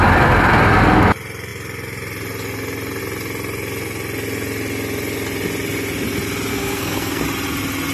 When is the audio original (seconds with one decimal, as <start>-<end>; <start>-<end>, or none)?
0.0-6.5; 7.2-7.9